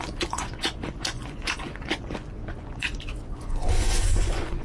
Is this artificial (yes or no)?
yes